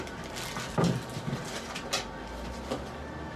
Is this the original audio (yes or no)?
yes